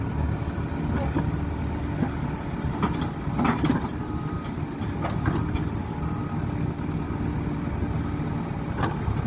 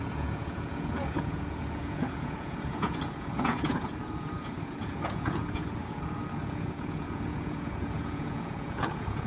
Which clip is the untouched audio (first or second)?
first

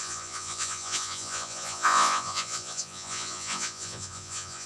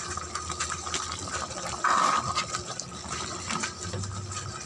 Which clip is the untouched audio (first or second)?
second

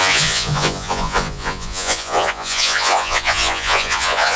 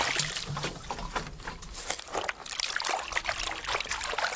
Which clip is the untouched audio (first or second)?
second